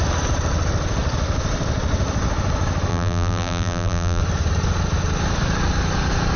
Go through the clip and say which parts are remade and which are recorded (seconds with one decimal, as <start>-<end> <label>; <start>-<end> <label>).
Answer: 0.0-2.9 recorded; 2.9-4.2 remade; 4.2-6.4 recorded